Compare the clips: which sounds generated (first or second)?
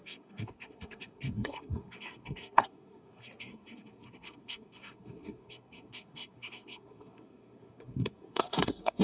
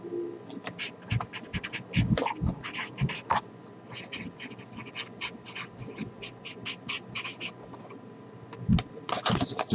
first